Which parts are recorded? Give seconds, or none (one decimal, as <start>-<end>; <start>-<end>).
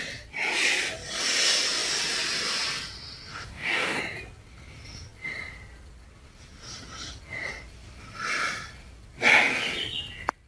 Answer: 0.0-3.3; 4.0-10.5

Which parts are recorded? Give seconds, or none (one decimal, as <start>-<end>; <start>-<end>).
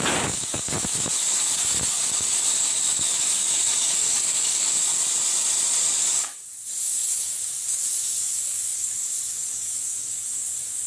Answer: 4.9-6.0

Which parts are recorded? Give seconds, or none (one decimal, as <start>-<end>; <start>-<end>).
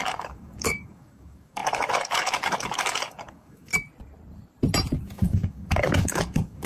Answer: 3.7-5.0